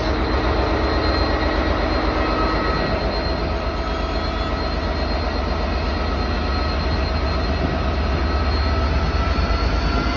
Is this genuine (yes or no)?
yes